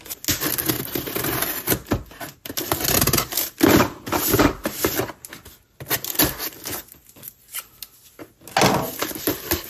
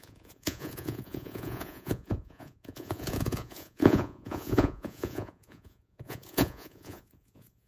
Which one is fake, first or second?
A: second